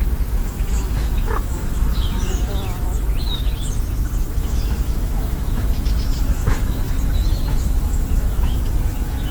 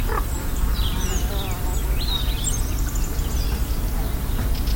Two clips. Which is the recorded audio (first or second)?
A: second